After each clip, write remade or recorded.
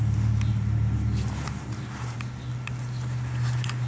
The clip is recorded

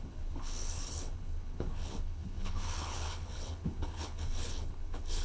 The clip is remade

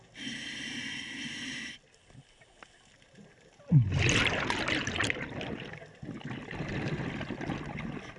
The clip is recorded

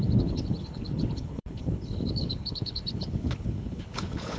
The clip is remade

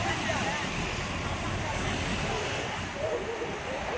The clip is recorded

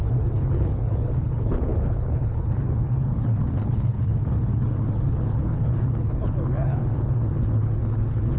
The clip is remade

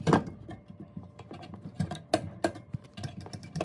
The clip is recorded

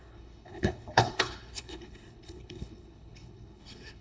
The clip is remade